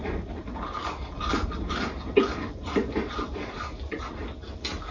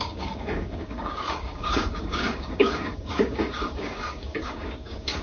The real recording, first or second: first